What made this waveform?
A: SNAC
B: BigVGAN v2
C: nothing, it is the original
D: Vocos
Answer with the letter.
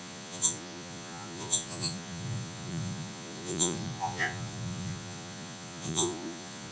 D